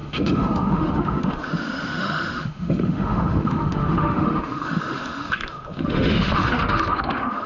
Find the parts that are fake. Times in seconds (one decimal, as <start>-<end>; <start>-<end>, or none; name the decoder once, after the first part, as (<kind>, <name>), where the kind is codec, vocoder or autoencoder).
0.0-7.5 (autoencoder, DAC-VAE)